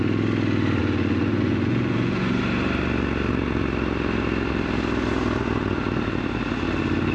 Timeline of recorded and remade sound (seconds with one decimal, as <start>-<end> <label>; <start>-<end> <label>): 0.0-0.8 recorded; 0.8-2.4 remade; 2.4-7.1 recorded